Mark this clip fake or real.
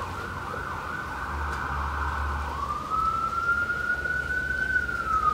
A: real